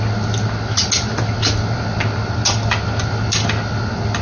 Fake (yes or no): no